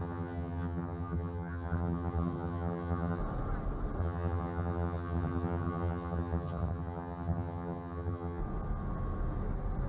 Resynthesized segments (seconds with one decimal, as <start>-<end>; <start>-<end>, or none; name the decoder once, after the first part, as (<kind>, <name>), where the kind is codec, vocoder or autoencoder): 0.0-3.2 (vocoder, HiFi-GAN); 4.0-8.4